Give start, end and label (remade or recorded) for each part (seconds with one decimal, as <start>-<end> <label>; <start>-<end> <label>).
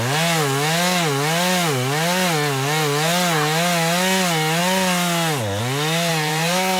0.0-6.1 recorded; 6.1-6.8 remade